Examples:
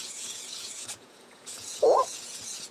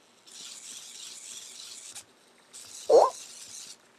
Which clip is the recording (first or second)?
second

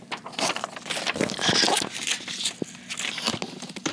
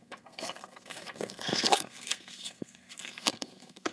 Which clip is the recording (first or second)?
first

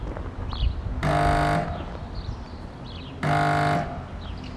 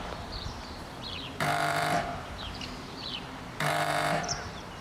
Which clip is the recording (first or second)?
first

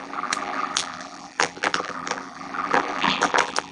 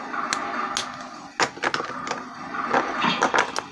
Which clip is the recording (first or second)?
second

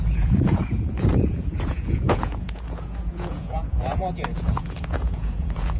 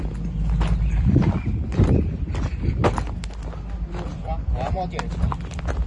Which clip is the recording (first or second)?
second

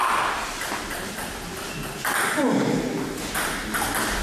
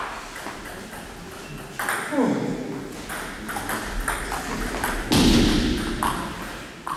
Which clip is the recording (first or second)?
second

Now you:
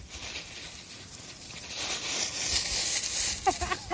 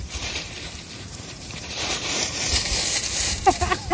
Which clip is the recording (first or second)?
first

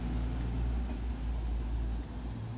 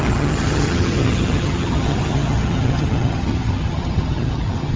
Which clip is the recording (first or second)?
first